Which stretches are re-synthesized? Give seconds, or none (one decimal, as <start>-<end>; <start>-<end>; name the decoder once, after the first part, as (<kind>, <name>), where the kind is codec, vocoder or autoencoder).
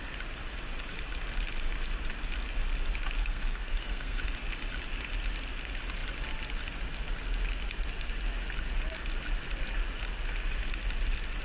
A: 3.2-4.2 (codec, SNAC)